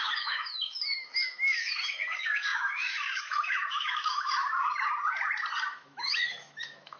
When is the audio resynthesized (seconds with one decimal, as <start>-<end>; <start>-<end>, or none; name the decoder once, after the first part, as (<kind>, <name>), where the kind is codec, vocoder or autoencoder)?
0.0-4.4 (autoencoder, DAC-VAE); 5.7-7.0